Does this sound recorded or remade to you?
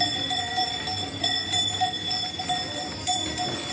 recorded